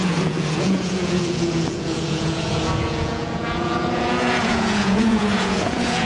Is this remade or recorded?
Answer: remade